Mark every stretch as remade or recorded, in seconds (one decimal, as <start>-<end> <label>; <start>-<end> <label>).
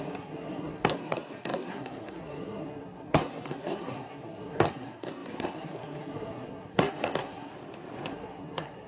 0.0-7.5 remade; 7.5-8.1 recorded; 8.1-8.9 remade